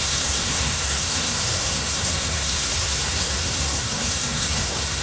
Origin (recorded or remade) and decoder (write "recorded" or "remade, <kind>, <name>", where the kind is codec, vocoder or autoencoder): remade, codec, SNAC